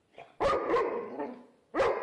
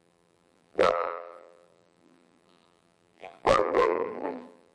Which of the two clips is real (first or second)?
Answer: first